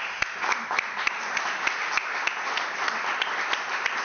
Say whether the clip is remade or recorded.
recorded